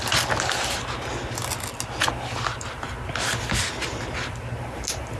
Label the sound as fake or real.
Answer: real